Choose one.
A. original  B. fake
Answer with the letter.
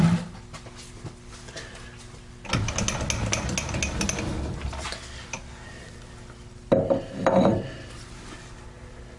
A